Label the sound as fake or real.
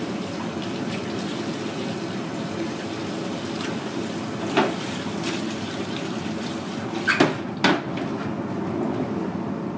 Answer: real